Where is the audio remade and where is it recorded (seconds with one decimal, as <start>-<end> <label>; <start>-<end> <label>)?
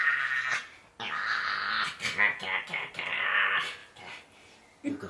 0.0-5.1 recorded